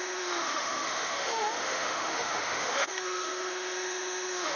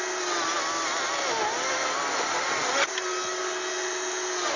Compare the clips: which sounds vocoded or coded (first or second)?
first